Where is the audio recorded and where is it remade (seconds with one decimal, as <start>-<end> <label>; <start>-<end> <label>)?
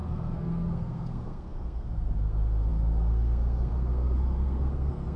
0.0-5.2 remade